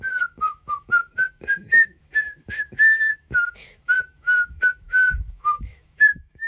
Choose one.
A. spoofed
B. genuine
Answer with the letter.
A